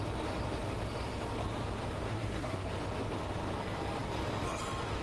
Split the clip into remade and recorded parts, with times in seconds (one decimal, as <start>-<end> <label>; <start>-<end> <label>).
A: 0.0-2.1 recorded; 2.1-2.7 remade; 2.7-5.0 recorded